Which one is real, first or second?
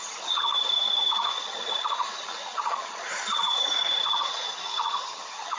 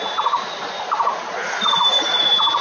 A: second